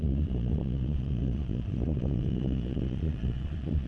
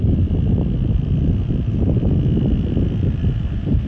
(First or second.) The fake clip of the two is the first